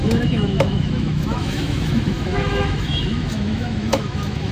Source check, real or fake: fake